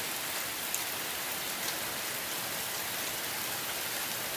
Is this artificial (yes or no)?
no